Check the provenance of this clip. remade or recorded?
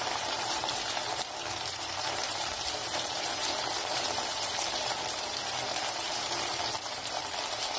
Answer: remade